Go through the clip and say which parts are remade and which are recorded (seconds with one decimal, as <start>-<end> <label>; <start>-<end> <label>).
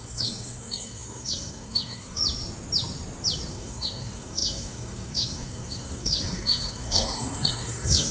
0.0-2.2 remade; 2.2-3.5 recorded; 3.5-8.1 remade